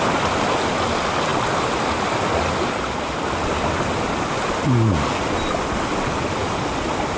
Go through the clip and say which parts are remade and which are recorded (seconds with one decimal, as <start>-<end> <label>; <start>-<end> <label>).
0.0-6.4 recorded; 6.4-7.2 remade